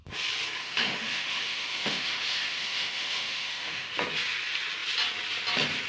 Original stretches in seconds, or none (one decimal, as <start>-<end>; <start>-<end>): 0.0-0.6; 3.9-5.9